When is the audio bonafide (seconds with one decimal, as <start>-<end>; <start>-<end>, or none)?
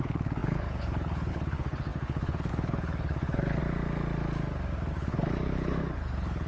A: 3.6-4.9